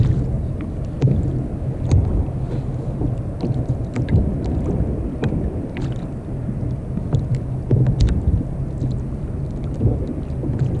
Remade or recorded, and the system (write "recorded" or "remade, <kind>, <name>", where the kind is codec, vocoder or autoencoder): recorded